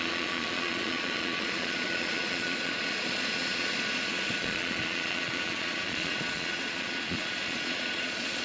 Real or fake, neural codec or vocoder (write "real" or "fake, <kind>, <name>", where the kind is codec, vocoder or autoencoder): fake, vocoder, Vocos